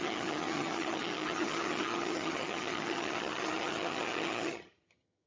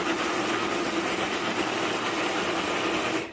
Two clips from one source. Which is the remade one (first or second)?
first